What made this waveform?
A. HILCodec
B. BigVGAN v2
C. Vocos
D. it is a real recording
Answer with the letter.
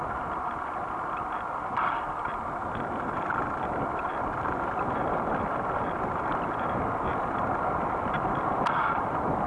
D